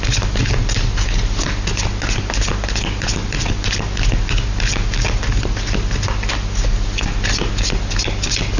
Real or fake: real